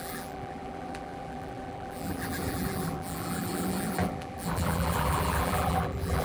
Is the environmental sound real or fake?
fake